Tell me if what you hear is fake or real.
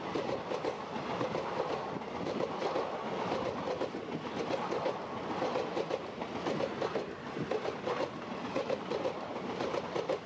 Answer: real